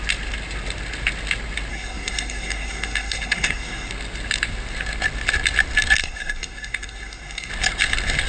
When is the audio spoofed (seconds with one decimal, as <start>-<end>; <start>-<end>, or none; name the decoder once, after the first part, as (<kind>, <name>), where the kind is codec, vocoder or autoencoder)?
1.7-3.9 (codec, SNAC); 6.0-7.5